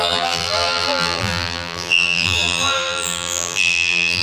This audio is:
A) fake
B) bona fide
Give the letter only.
A